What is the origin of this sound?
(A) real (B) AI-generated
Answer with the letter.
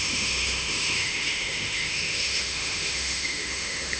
B